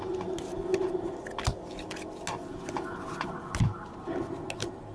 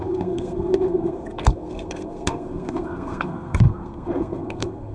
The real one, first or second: first